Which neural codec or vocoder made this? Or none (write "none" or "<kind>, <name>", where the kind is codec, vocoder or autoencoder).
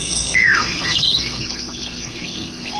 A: codec, SNAC